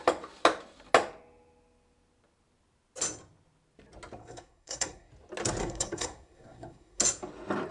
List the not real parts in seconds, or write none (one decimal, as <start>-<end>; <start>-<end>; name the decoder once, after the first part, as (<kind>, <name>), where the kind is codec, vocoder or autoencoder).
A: 4.2-5.1 (codec, SNAC); 5.6-7.0